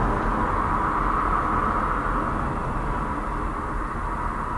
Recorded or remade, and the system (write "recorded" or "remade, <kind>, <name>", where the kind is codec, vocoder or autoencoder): recorded